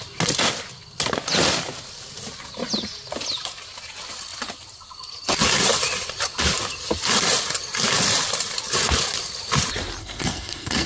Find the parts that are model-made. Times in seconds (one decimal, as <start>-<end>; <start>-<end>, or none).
10.0-10.9